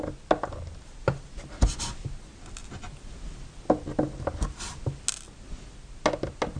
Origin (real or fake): real